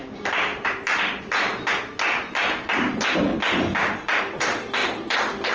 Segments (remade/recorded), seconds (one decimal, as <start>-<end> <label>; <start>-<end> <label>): 0.0-5.5 recorded